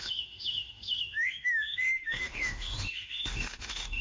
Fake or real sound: fake